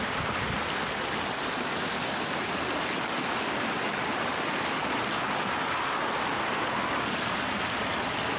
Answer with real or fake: real